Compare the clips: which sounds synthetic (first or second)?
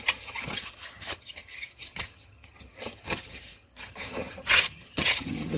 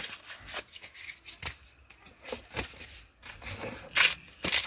first